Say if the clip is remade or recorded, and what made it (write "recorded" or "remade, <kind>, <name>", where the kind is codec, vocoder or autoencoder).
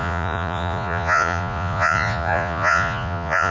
remade, vocoder, Vocos